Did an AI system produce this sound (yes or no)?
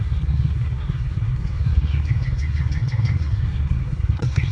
yes